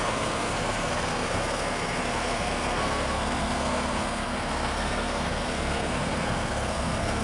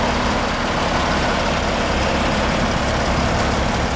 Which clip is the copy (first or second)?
first